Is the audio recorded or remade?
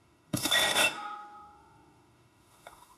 remade